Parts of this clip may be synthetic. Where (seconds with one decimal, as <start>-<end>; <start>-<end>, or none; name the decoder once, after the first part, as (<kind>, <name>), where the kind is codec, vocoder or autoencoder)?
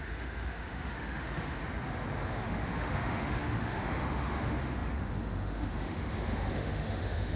0.0-1.6 (autoencoder, DAC-VAE); 2.3-7.3